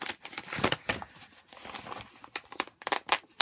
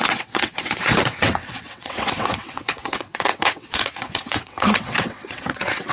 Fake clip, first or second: second